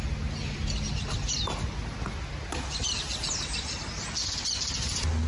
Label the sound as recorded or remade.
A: recorded